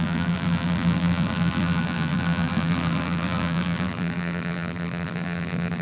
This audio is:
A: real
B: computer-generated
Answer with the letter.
B